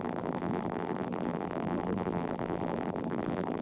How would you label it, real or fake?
fake